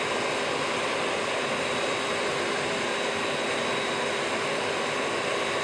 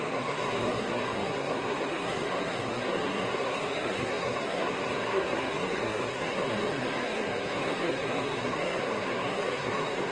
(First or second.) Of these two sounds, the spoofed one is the second